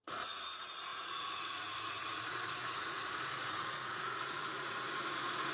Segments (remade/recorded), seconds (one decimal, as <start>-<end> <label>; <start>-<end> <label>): 0.0-5.5 remade